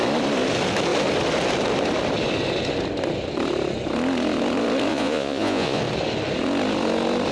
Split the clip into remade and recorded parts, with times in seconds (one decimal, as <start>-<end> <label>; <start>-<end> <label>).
0.0-4.9 recorded; 4.9-5.8 remade; 5.8-7.3 recorded